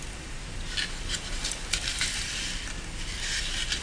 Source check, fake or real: real